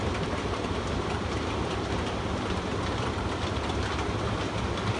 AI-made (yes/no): yes